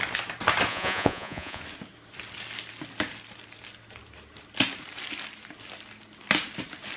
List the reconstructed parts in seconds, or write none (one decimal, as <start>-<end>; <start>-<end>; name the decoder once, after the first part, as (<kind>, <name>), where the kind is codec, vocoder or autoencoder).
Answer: 0.7-1.6 (vocoder, Vocos)